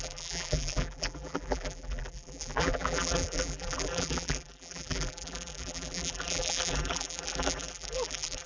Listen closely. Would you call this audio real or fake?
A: fake